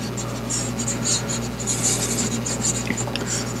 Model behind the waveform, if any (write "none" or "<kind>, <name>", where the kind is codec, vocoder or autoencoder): none